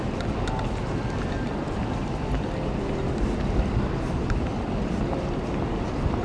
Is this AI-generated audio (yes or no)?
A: no